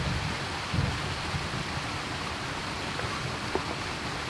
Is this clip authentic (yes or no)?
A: yes